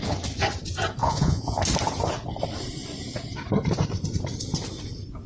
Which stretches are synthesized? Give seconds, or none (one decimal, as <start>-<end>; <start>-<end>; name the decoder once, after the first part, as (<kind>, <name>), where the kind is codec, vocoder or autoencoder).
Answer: 1.0-1.6 (vocoder, Vocos)